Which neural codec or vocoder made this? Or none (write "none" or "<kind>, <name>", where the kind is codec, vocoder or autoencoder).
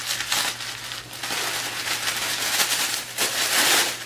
none